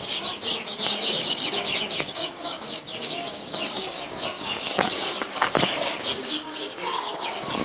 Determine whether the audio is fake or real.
fake